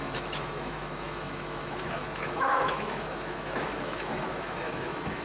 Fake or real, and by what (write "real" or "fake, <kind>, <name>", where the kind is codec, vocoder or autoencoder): fake, autoencoder, DAC-VAE